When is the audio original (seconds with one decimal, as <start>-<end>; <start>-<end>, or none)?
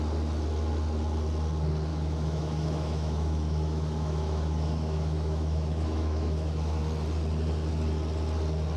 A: 0.0-1.9; 6.8-8.8